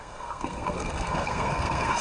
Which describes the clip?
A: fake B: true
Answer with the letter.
A